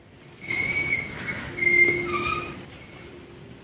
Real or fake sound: real